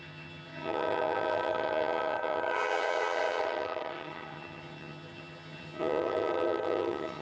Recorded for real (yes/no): no